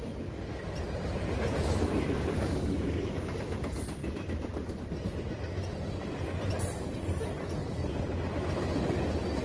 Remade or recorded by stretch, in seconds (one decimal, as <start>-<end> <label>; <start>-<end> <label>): 0.0-7.6 recorded; 7.6-8.3 remade; 8.3-9.4 recorded